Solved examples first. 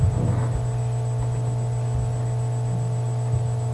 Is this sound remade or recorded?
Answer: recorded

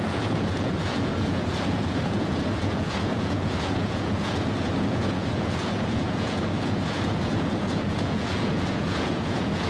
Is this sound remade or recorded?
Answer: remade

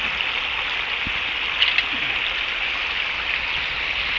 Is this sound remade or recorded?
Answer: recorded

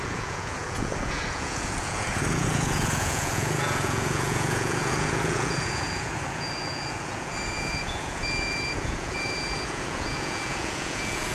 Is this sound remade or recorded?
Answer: remade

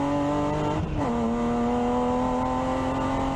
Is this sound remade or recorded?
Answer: recorded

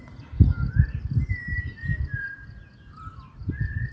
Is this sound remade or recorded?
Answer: recorded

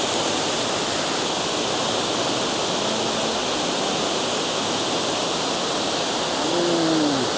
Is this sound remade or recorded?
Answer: recorded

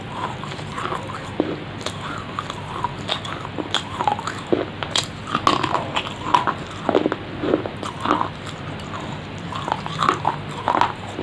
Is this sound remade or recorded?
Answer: recorded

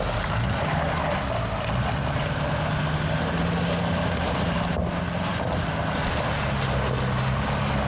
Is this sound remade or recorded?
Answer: recorded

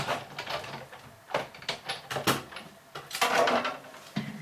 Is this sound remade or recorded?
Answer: recorded